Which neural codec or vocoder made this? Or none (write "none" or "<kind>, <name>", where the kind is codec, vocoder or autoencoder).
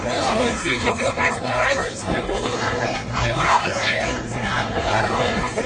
codec, SNAC